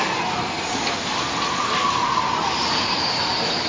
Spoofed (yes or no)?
no